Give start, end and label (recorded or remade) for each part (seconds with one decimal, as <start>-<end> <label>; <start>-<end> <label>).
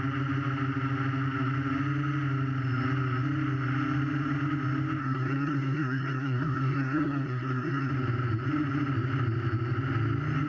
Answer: 0.0-5.0 recorded; 5.0-7.9 remade; 7.9-10.5 recorded